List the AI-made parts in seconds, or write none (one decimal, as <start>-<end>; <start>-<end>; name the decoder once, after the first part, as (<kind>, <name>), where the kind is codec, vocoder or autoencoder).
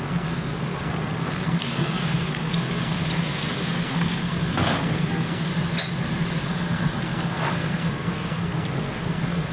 0.0-5.5 (codec, SNAC); 6.4-9.5